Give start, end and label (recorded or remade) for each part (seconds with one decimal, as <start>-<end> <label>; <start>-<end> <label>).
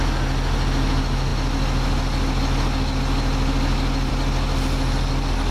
0.0-5.5 recorded